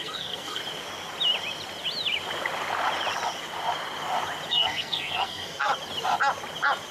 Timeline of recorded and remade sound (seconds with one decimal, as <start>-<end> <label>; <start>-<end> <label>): 0.0-0.6 remade; 0.6-4.5 recorded; 4.5-5.7 remade; 5.7-6.9 recorded